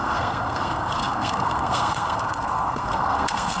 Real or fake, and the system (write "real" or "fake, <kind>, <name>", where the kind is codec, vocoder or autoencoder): fake, codec, SNAC